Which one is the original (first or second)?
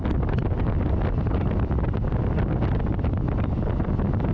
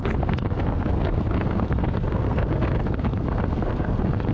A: first